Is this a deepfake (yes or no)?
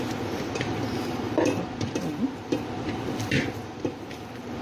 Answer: yes